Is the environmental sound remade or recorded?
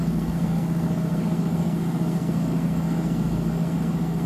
remade